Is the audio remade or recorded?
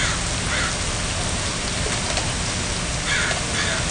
recorded